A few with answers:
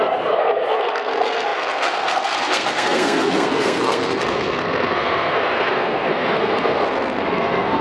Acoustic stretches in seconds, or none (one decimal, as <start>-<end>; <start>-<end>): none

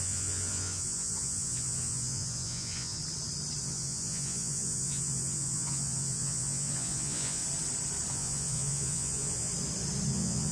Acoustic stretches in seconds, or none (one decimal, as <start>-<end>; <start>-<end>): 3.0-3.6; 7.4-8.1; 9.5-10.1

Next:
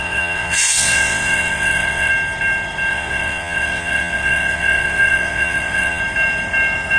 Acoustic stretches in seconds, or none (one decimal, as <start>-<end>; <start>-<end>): 2.1-2.9; 6.0-7.0